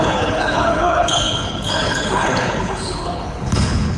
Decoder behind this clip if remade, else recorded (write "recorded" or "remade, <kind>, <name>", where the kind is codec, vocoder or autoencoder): remade, codec, HILCodec